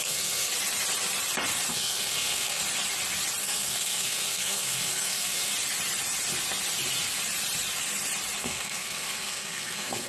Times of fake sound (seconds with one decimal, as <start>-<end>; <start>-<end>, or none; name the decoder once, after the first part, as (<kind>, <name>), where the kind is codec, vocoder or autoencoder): 0.0-0.5 (codec, SNAC); 1.7-2.6; 3.4-5.5; 8.4-10.1